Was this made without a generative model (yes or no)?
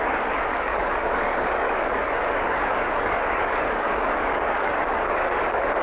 no